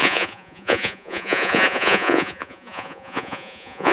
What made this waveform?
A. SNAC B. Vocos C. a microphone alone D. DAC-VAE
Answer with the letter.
B